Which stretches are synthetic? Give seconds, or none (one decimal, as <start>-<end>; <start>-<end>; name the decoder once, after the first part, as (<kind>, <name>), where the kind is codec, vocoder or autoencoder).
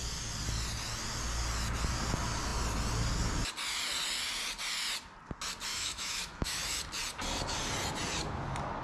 5.7-6.8 (autoencoder, DAC-VAE)